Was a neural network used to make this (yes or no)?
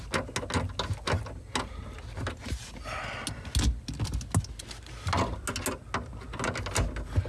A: no